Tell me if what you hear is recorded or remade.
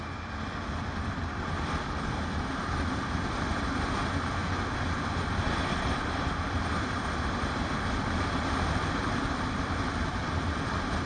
recorded